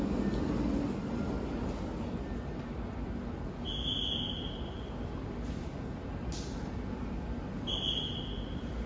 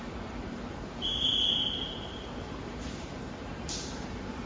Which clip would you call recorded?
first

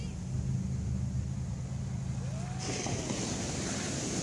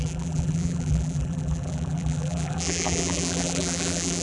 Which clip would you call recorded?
first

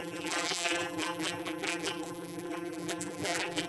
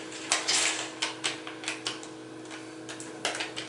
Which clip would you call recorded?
second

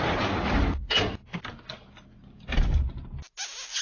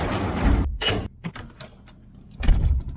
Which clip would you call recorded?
first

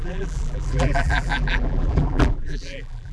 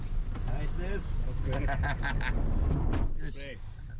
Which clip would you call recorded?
second